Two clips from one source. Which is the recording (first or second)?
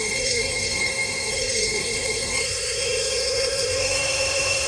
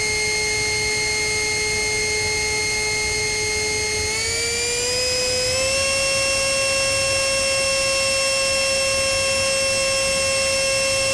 second